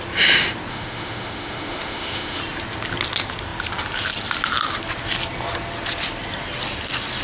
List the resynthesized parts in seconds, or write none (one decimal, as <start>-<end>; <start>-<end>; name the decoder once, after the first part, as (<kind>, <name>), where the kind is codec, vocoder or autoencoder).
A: 0.7-2.4 (autoencoder, DAC-VAE)